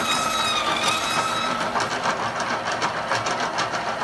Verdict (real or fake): real